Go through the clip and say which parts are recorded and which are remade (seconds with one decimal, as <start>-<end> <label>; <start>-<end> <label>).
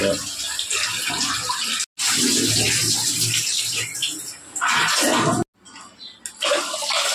0.0-7.1 recorded